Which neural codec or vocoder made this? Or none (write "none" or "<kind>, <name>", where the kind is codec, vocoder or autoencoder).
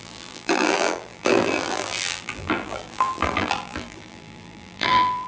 vocoder, BigVGAN v2